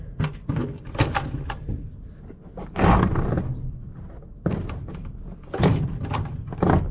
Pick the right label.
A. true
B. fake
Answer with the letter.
A